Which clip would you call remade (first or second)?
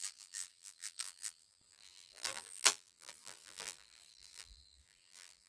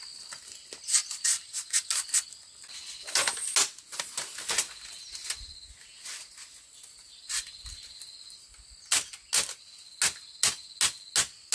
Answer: first